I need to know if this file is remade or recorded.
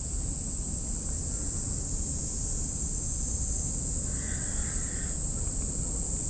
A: recorded